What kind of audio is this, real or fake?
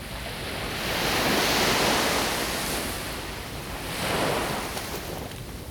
real